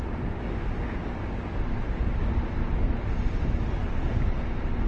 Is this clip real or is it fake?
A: real